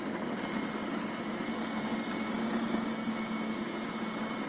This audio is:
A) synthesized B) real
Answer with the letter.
B